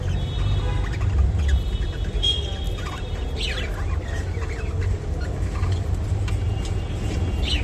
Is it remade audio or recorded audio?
recorded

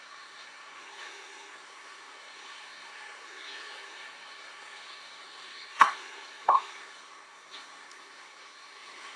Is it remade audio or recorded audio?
remade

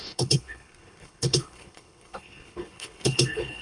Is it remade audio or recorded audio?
remade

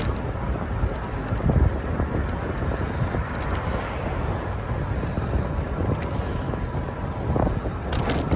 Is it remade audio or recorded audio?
recorded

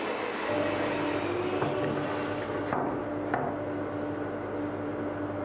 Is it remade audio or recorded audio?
recorded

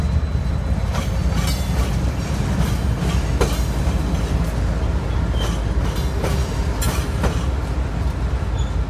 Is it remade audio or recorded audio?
recorded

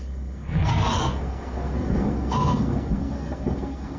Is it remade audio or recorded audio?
remade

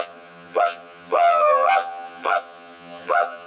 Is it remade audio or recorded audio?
remade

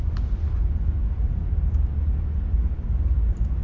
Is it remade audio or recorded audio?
recorded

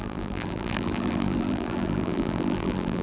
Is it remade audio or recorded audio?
remade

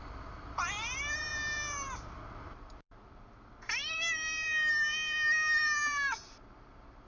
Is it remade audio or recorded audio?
remade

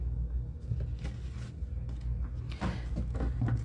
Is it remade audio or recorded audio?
recorded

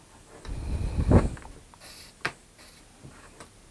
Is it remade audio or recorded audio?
recorded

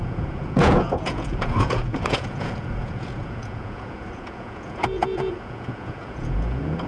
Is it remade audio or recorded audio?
remade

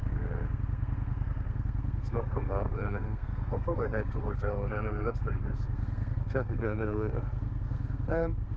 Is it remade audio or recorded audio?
remade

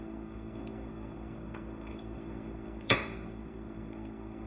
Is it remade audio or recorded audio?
remade